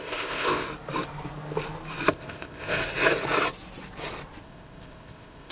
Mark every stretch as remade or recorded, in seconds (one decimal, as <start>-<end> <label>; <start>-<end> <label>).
0.0-0.7 remade; 0.7-2.1 recorded; 2.1-2.8 remade; 2.8-4.4 recorded; 4.4-5.5 remade